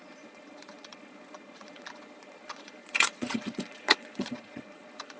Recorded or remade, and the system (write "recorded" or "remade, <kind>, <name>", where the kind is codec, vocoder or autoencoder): remade, vocoder, Vocos